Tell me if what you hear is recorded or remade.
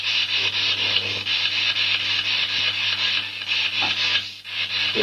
recorded